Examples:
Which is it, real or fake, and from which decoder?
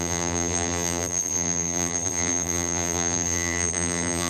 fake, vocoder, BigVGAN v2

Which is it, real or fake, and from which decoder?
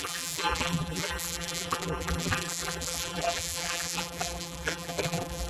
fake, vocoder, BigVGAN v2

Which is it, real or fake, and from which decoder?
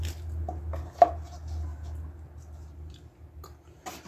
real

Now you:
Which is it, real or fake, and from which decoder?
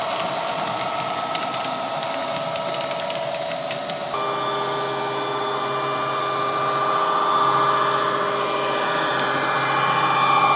real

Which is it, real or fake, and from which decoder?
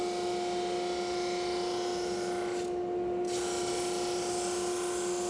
real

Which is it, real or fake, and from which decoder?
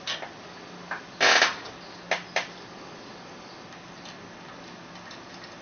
real